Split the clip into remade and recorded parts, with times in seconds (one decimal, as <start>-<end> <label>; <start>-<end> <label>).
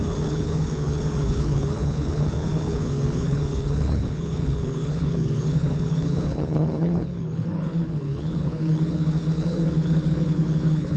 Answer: 0.0-11.0 remade